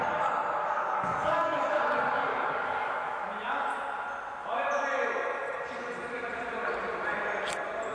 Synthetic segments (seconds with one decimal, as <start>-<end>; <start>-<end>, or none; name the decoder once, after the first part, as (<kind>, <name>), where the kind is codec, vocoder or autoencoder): 0.6-1.8 (codec, DAC); 2.3-3.2